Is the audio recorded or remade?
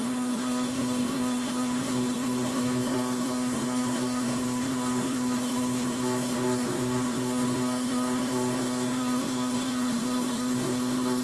remade